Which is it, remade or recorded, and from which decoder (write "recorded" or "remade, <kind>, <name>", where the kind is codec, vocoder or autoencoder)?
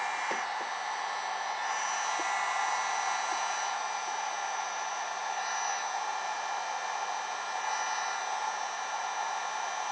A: recorded